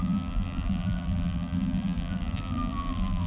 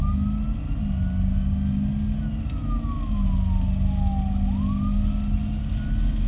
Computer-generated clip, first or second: first